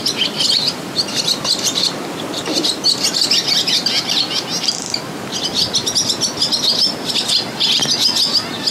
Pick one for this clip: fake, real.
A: real